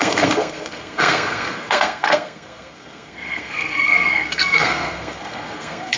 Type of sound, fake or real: fake